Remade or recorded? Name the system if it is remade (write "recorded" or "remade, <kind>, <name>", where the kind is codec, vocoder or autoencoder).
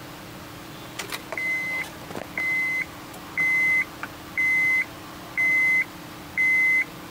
recorded